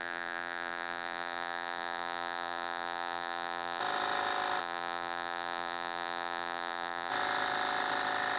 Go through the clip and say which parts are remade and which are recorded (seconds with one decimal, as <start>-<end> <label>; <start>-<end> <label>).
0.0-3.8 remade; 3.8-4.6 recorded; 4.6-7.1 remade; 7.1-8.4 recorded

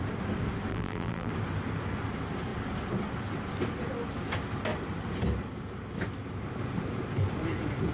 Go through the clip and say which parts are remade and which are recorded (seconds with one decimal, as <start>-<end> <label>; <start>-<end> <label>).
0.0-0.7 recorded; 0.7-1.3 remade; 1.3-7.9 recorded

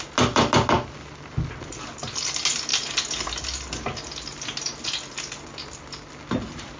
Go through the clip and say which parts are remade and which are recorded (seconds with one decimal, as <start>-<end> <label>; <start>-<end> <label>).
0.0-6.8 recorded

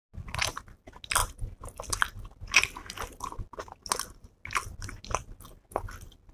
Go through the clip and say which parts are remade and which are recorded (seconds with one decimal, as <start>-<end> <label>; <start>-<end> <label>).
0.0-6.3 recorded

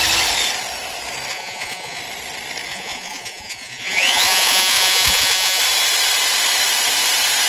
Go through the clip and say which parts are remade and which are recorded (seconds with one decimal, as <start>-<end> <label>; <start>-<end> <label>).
0.0-1.3 recorded; 1.3-2.0 remade; 2.0-2.7 recorded; 2.7-5.6 remade; 5.6-7.5 recorded